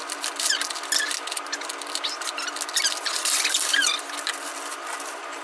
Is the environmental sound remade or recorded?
recorded